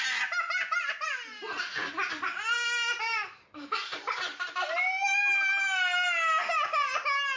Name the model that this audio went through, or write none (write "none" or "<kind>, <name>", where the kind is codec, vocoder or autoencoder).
none